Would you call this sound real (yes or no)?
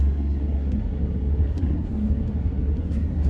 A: no